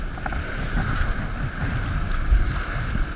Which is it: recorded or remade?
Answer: recorded